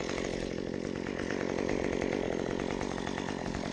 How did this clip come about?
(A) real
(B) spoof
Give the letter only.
A